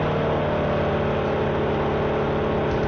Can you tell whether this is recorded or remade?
recorded